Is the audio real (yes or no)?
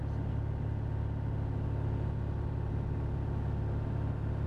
yes